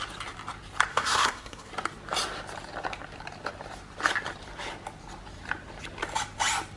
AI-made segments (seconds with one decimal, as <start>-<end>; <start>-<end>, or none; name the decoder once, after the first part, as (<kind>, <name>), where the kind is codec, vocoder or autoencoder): 0.9-1.7 (codec, SNAC)